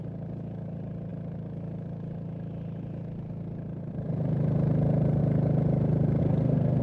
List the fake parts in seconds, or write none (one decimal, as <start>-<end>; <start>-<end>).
6.2-6.8